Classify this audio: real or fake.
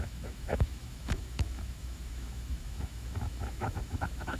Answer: fake